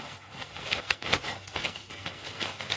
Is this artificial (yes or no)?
yes